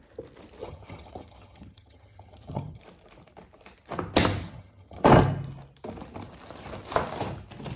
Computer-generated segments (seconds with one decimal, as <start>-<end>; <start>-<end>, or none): 0.6-2.8; 4.4-5.0